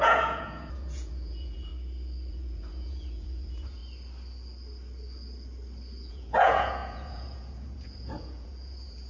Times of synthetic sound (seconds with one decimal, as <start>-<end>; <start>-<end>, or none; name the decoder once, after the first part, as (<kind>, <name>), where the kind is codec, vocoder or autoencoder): 0.0-1.7 (vocoder, Vocos); 2.3-3.8; 6.1-9.1